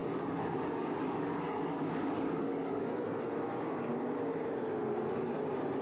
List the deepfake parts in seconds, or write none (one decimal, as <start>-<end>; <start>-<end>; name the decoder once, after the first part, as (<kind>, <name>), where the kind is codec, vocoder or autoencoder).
0.0-2.8 (codec, DAC)